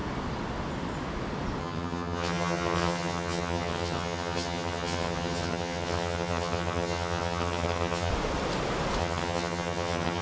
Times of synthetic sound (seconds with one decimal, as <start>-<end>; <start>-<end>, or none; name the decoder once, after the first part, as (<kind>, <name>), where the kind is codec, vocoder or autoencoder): 1.6-8.1 (vocoder, HiFi-GAN); 9.0-10.2

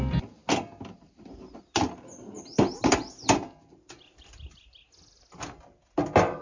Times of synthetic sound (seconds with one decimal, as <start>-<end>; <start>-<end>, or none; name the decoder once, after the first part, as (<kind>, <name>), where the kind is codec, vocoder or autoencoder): none

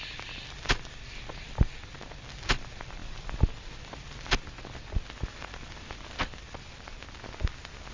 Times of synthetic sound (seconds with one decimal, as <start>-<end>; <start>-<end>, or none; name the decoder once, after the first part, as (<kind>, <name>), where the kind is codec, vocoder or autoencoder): none

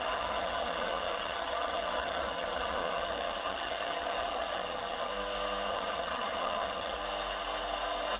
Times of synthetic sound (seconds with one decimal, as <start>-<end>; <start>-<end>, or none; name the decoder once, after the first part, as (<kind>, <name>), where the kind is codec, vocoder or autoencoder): 0.0-5.1 (vocoder, HiFi-GAN); 5.7-7.0

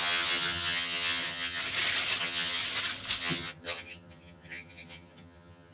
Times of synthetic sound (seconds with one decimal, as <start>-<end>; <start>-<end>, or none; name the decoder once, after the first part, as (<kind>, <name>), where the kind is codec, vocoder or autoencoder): 0.0-1.6 (vocoder, HiFi-GAN); 2.2-2.6; 3.2-5.7